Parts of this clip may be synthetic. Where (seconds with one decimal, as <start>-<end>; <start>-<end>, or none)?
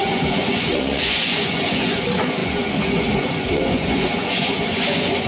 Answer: 0.0-5.3